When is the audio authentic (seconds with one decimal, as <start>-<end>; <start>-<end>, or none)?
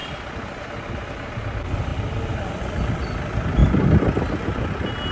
0.0-1.9; 2.5-3.6; 4.2-5.1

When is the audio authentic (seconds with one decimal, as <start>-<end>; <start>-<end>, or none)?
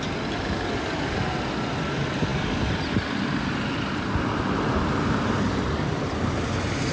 0.0-6.9